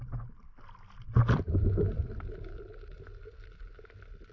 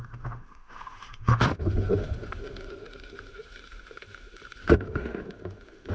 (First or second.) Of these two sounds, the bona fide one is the first